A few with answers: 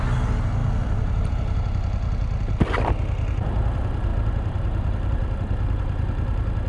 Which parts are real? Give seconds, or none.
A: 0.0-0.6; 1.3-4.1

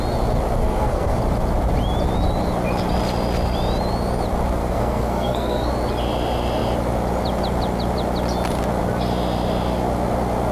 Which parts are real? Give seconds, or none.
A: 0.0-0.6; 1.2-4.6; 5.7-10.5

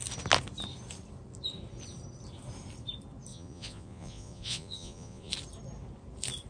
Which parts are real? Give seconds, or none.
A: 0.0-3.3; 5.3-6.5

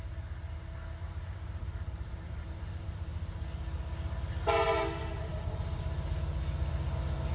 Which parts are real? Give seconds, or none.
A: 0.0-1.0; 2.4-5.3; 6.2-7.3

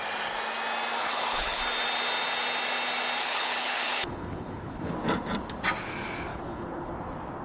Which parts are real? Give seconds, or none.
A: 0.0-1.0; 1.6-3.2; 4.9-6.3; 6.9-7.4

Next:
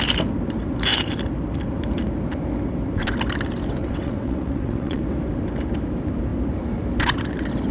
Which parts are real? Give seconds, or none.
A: 0.0-3.8; 5.0-7.7